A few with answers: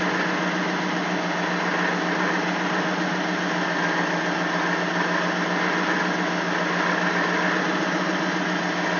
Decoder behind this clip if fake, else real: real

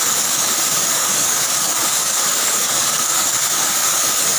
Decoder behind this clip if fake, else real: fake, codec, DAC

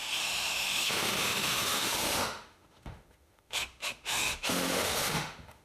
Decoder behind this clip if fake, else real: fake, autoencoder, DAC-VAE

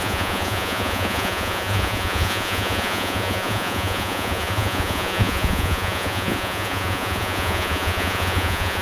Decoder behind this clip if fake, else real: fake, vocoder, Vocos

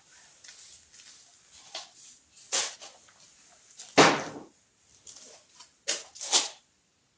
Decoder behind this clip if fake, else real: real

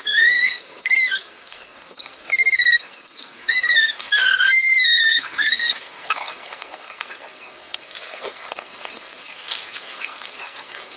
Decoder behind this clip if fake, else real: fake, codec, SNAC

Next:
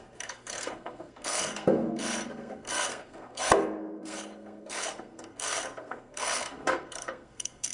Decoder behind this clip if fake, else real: fake, codec, SNAC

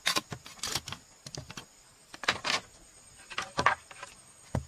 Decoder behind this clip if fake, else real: real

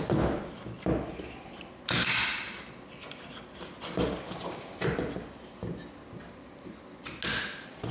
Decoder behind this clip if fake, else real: real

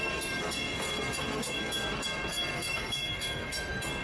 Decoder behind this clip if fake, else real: fake, codec, SNAC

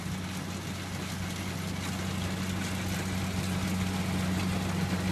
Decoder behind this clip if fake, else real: real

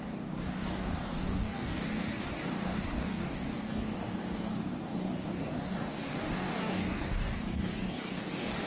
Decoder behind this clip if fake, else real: fake, codec, DAC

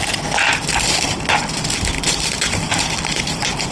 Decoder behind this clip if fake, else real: real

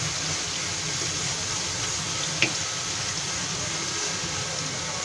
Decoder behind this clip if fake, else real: real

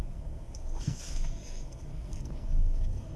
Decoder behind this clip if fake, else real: fake, codec, SNAC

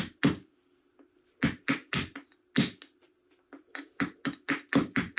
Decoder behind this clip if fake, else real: real